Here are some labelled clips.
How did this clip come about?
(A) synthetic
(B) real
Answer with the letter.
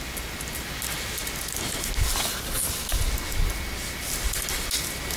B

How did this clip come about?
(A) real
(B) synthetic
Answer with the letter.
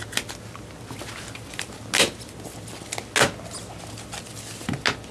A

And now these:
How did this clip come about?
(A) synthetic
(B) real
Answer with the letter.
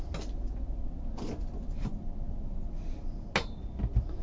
B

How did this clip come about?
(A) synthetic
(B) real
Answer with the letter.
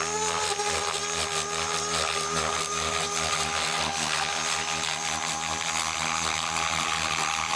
B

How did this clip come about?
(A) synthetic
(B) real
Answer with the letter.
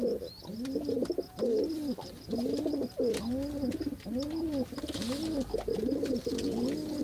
B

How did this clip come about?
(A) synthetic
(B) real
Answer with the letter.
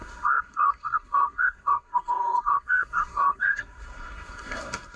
A